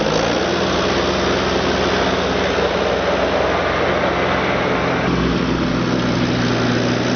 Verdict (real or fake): real